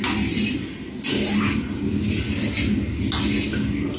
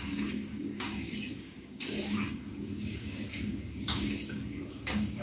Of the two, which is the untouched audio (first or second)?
first